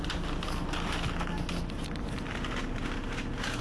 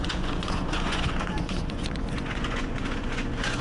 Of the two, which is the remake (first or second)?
second